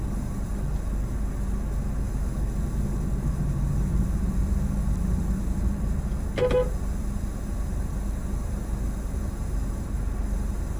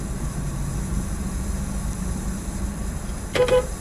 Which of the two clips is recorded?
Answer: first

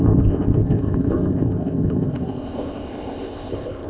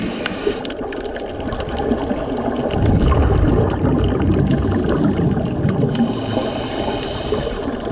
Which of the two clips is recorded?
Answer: second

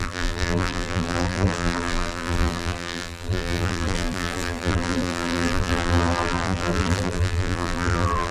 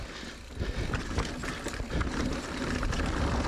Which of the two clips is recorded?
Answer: second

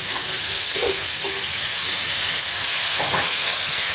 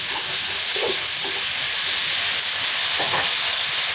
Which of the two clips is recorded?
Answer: second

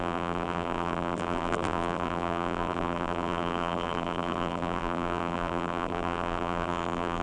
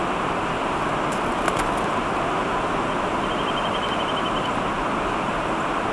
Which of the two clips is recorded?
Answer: second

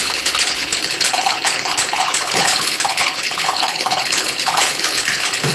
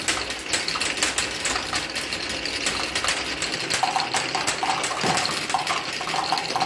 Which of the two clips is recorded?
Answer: second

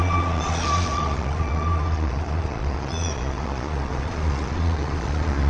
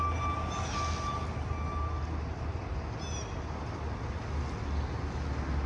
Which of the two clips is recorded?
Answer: second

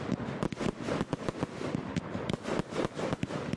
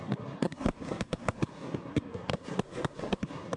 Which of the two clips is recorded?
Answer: first